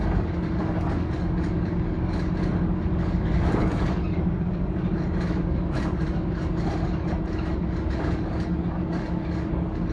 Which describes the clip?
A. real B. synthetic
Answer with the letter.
B